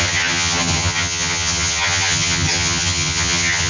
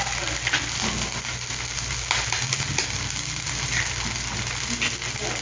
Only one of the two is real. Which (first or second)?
second